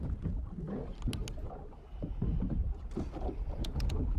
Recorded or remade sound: recorded